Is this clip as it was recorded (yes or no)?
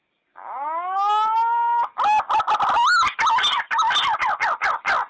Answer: yes